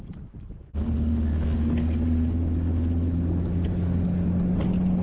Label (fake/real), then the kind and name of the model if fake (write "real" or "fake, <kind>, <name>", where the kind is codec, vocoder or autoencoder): real